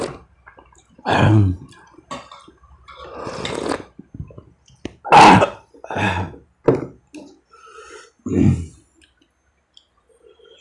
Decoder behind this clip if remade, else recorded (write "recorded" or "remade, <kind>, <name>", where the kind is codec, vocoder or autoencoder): recorded